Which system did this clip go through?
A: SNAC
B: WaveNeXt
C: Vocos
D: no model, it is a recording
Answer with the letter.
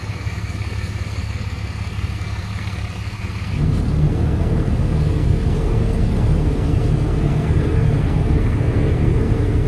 A